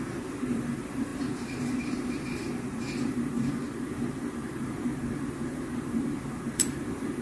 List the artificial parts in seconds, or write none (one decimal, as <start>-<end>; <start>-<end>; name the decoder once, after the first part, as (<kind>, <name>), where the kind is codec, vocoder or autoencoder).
0.0-7.2 (vocoder, BigVGAN v2)